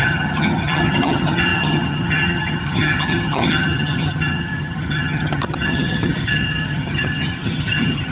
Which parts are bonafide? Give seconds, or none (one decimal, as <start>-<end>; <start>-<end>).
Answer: none